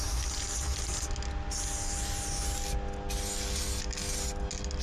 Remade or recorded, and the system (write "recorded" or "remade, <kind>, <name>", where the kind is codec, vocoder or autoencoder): recorded